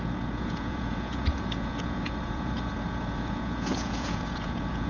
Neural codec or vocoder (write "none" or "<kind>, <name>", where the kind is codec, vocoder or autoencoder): vocoder, Vocos